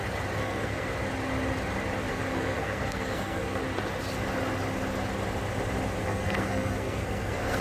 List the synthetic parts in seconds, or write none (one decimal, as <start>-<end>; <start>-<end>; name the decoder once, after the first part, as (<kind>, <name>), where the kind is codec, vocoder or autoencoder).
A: 0.4-0.9 (codec, SNAC); 2.1-3.6; 6.0-7.6